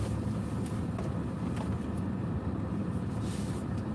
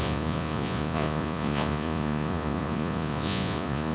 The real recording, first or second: first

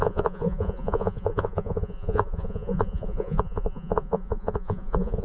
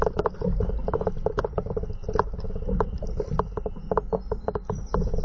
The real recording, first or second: second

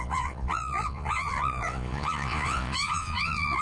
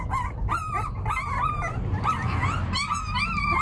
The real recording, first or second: second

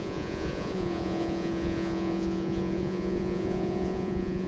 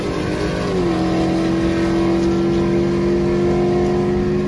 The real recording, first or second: second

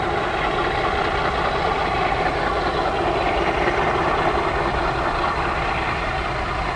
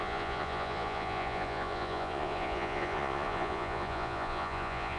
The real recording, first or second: first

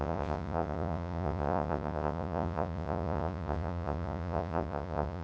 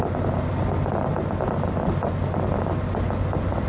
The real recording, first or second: second